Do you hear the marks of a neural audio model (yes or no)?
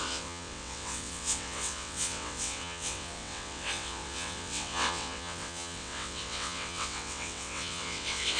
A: yes